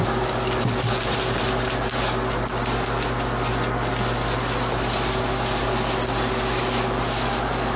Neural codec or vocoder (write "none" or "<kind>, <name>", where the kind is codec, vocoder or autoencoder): none